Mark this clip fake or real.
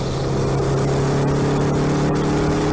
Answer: real